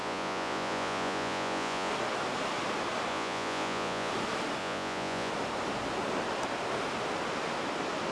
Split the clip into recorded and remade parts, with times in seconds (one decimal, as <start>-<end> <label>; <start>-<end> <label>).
0.0-1.9 remade; 1.9-3.1 recorded; 3.1-4.1 remade; 4.1-4.6 recorded; 4.6-5.3 remade; 5.3-8.1 recorded